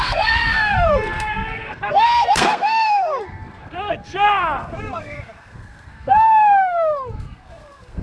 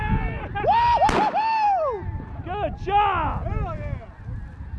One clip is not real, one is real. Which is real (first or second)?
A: second